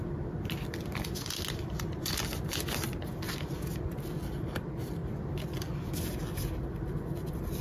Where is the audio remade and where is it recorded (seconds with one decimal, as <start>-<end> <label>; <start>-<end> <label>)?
0.0-7.6 recorded